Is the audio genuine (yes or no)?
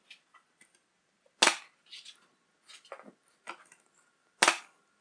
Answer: yes